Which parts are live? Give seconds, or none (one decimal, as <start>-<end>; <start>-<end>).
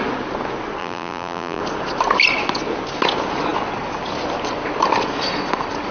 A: 0.0-0.8; 1.6-5.9